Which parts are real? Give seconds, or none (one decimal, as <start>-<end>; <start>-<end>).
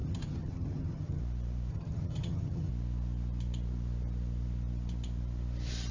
1.2-1.7; 2.7-5.9